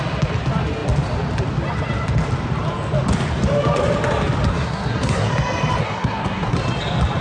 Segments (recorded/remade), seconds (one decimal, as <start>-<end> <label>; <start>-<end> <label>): 0.0-4.5 recorded; 4.5-5.3 remade; 5.3-5.8 recorded; 5.8-6.6 remade; 6.6-7.2 recorded

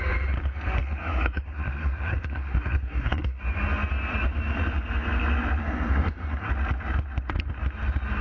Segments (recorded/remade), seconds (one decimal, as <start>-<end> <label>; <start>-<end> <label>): 0.0-0.8 recorded; 0.8-3.4 remade; 3.4-5.6 recorded; 5.6-6.5 remade; 6.5-8.2 recorded

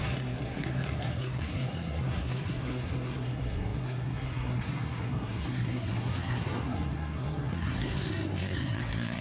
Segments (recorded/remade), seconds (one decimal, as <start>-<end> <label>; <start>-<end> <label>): 0.0-9.2 remade

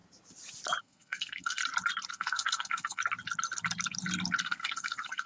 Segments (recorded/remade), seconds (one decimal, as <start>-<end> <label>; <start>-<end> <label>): 0.0-0.8 recorded; 0.8-1.6 remade; 1.6-2.1 recorded; 2.1-3.0 remade; 3.0-4.4 recorded; 4.4-5.3 remade

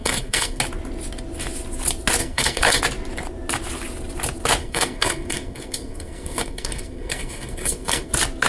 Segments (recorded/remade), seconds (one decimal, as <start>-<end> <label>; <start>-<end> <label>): 0.0-0.6 remade; 0.6-2.2 recorded; 2.2-2.8 remade; 2.8-4.6 recorded; 4.6-8.1 remade; 8.1-8.5 recorded

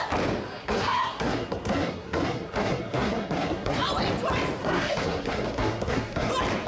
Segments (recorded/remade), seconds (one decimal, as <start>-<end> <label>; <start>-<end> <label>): 0.0-0.6 recorded; 0.6-3.8 remade; 3.8-4.6 recorded; 4.6-6.3 remade; 6.3-6.7 recorded

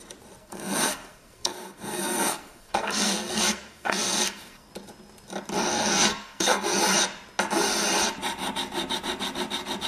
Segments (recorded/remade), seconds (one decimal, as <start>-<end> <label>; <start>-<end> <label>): 0.0-0.4 recorded; 0.4-4.7 remade; 4.7-5.7 recorded; 5.7-6.8 remade; 6.8-9.9 recorded